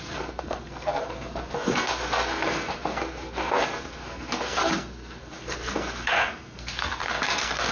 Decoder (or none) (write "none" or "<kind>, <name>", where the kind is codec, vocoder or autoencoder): codec, SNAC